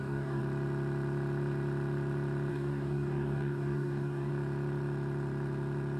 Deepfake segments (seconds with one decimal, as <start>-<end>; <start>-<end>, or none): 0.0-0.4; 2.5-4.3